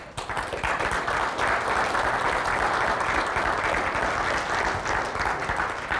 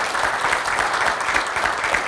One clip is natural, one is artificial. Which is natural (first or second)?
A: first